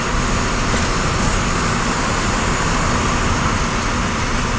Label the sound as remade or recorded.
recorded